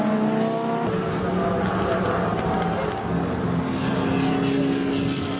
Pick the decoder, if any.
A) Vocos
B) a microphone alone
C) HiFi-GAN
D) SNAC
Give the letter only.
B